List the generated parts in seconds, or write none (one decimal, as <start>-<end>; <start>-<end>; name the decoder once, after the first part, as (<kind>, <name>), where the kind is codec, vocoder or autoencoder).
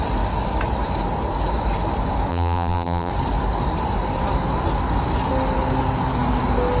2.3-3.1 (vocoder, BigVGAN v2)